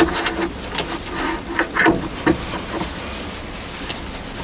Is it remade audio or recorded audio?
recorded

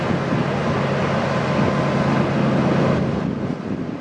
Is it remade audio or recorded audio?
recorded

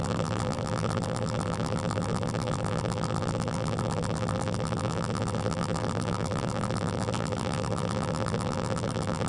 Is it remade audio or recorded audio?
remade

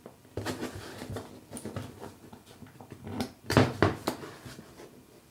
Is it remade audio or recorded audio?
remade